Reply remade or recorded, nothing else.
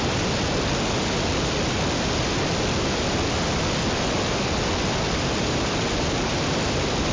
recorded